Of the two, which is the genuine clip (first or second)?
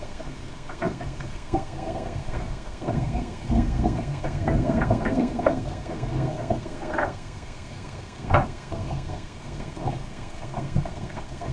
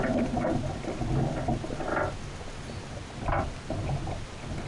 second